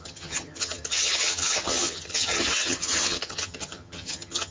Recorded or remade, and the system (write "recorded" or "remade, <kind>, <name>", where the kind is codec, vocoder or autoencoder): remade, vocoder, HiFi-GAN